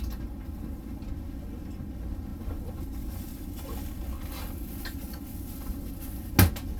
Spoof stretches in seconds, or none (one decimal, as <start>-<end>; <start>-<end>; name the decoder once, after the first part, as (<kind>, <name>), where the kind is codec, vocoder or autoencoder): none